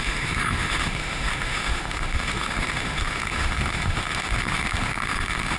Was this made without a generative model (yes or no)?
no